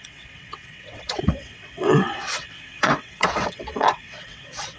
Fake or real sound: fake